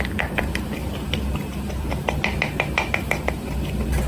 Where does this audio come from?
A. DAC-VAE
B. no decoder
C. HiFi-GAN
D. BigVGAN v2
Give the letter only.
D